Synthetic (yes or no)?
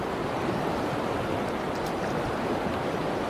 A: no